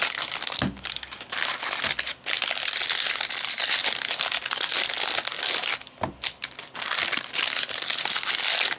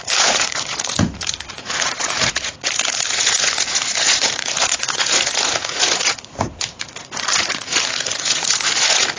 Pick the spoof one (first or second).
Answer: second